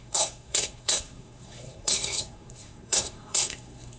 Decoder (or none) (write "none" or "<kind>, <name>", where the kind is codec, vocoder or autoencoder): codec, SNAC